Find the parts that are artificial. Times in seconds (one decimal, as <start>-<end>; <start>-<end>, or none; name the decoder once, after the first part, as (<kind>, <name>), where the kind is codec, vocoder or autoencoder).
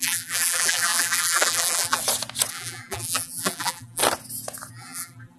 0.0-2.0 (vocoder, BigVGAN v2); 2.5-4.0; 4.7-5.4